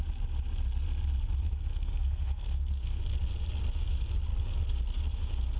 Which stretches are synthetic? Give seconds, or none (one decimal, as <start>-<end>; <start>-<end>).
1.7-3.0